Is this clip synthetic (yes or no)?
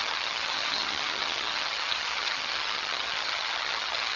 yes